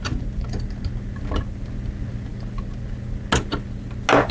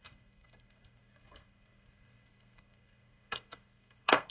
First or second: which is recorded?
first